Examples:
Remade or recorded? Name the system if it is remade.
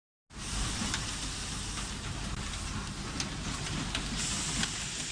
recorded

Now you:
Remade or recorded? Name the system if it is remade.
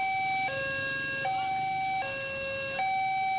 recorded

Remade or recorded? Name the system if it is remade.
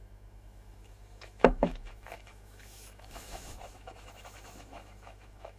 remade, autoencoder, DAC-VAE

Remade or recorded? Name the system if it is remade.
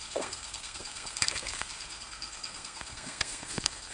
remade, codec, SNAC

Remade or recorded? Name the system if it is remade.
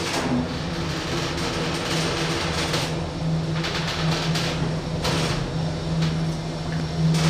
recorded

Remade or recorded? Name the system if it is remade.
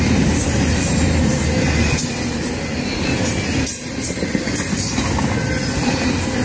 recorded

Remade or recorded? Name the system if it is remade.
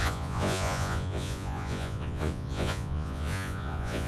remade, vocoder, Vocos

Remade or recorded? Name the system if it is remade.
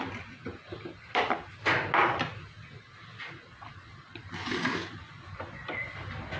recorded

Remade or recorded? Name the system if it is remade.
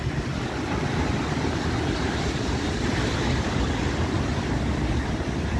remade, vocoder, BigVGAN v2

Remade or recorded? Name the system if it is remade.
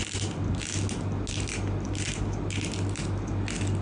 recorded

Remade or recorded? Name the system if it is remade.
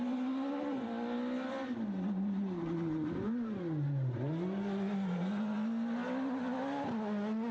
recorded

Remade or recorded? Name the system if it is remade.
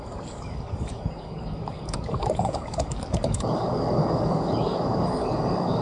remade, codec, DAC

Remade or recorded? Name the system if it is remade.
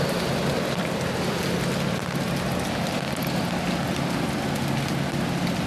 recorded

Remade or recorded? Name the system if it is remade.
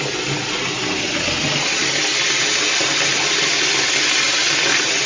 recorded